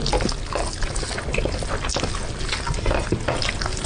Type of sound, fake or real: real